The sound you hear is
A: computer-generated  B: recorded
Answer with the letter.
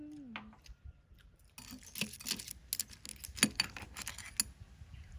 B